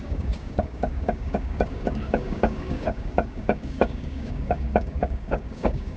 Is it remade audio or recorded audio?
remade